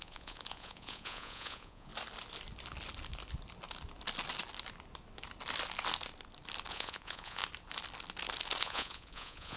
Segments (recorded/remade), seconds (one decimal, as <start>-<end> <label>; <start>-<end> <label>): 0.0-1.9 remade; 1.9-6.7 recorded; 6.7-7.4 remade; 7.4-8.6 recorded; 8.6-9.6 remade